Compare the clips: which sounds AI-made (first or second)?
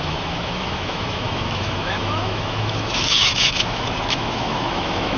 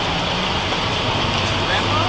first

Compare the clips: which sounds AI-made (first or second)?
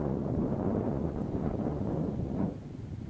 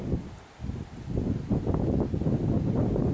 first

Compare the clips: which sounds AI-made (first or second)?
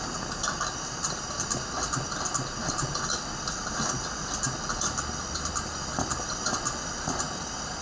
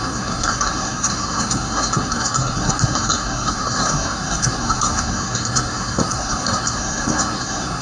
second